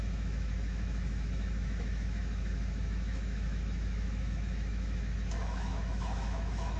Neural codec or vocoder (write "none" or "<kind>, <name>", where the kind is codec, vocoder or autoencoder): autoencoder, DAC-VAE